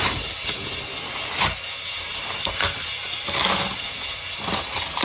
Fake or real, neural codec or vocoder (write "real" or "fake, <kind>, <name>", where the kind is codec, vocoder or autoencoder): real